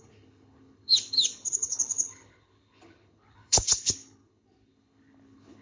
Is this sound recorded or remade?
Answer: remade